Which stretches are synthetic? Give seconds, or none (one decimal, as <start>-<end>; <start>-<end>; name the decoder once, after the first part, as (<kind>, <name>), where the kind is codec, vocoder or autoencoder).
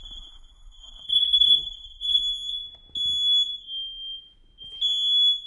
0.0-2.2 (codec, SNAC)